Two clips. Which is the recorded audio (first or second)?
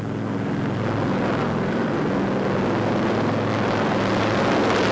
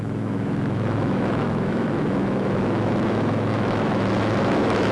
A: first